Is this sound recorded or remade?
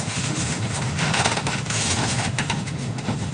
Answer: remade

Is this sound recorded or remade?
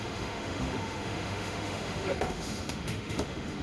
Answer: remade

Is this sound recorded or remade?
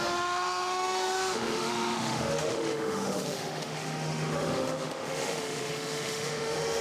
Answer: remade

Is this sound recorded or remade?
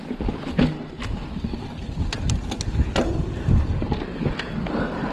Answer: recorded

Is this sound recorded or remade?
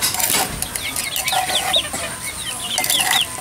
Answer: recorded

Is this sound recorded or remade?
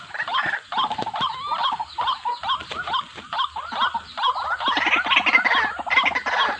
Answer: recorded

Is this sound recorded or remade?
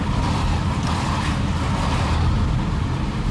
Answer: recorded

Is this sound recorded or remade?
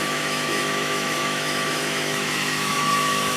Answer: remade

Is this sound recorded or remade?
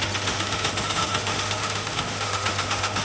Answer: remade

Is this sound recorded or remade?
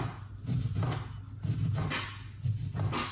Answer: recorded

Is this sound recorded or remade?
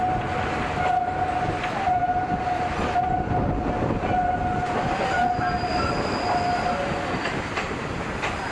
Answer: recorded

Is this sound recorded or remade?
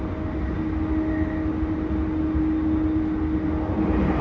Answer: recorded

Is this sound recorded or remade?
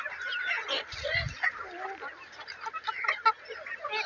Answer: recorded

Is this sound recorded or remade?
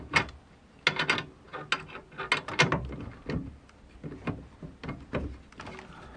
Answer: recorded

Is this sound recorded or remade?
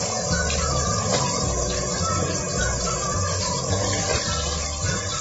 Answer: recorded